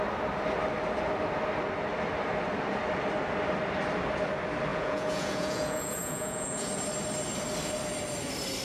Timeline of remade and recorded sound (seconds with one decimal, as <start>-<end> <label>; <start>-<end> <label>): 0.0-4.7 recorded; 4.7-6.8 remade; 6.8-8.6 recorded